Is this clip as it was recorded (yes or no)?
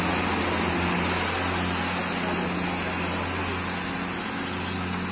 yes